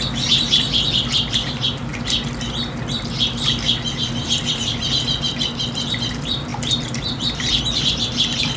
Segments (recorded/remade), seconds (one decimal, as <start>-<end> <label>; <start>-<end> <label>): 0.0-1.9 remade; 1.9-4.5 recorded; 4.5-8.6 remade